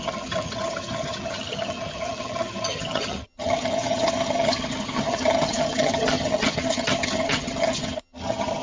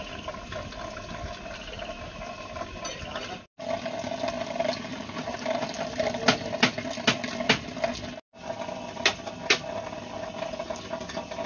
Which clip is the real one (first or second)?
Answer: second